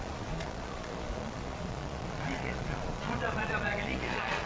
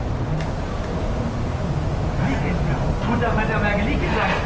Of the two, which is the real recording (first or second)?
second